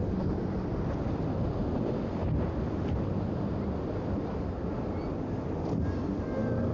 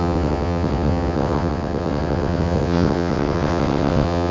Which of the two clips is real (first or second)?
first